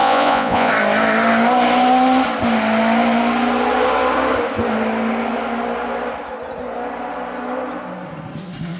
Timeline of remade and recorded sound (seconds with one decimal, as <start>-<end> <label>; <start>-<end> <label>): 0.0-0.7 remade; 0.7-8.8 recorded